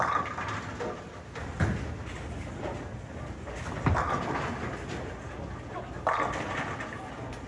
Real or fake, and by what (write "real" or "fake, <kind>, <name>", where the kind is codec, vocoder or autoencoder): real